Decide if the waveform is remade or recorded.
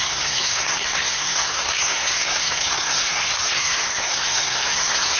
remade